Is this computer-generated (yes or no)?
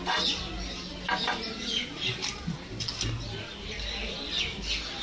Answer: no